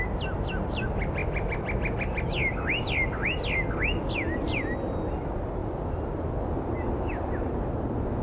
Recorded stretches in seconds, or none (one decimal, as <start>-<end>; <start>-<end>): 0.0-8.2